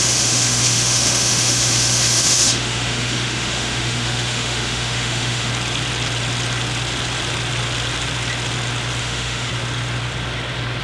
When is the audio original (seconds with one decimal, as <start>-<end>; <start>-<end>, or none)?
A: 5.5-9.0; 9.5-10.8